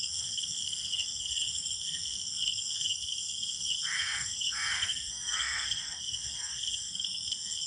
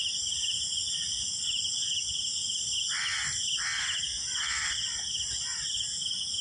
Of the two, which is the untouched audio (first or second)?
second